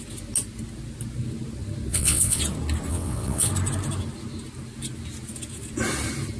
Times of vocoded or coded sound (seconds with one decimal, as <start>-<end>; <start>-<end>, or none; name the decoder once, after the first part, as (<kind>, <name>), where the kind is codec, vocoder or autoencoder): 1.9-2.4 (vocoder, WaveNeXt); 2.9-3.5